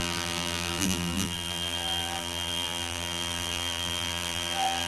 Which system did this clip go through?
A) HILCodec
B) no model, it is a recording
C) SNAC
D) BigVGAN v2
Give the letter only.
D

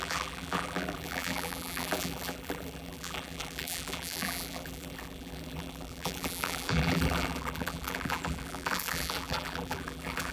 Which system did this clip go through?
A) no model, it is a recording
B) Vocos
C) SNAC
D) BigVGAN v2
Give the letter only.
D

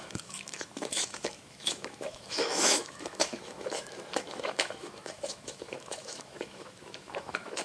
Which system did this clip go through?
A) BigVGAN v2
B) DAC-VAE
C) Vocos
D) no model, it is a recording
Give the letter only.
B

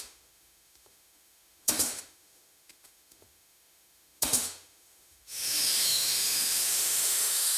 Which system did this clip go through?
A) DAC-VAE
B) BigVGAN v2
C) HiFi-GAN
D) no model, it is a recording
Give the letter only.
A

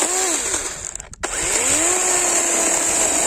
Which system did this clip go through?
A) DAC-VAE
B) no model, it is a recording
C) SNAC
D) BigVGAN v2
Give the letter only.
B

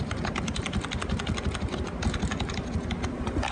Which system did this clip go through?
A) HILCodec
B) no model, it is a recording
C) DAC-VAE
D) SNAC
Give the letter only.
B